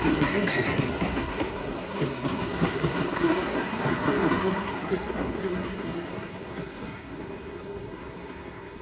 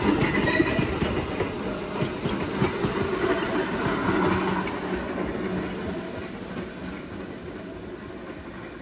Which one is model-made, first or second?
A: first